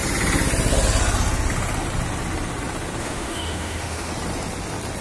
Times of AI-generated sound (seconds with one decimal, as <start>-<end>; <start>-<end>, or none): 3.0-4.1